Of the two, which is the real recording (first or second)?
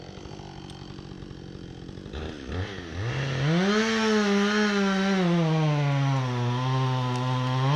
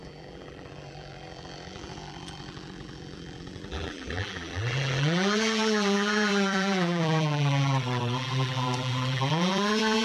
first